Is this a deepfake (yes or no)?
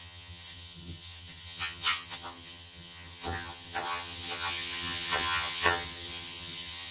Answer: yes